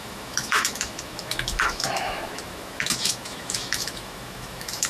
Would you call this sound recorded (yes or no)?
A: no